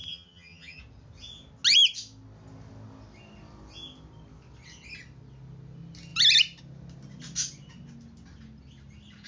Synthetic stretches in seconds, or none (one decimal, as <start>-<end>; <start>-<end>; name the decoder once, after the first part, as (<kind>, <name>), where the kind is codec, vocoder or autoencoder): 0.0-0.8 (vocoder, HiFi-GAN)